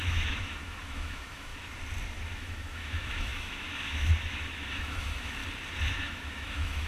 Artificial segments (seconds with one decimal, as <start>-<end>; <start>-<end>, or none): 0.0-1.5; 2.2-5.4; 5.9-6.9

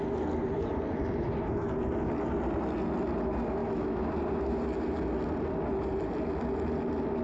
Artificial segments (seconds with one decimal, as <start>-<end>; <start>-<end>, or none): 3.6-4.1

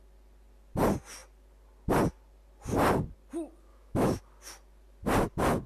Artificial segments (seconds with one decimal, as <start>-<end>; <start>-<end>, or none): 3.7-4.2